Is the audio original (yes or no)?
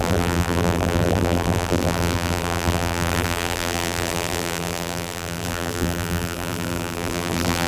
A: no